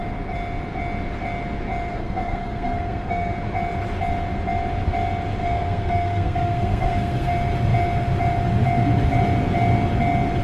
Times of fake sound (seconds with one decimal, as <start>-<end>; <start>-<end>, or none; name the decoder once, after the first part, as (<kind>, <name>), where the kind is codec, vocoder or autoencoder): 1.9-3.3 (codec, SNAC); 5.4-7.3